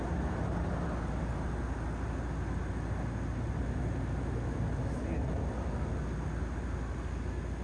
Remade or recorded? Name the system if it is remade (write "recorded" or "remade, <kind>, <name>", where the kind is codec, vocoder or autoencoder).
recorded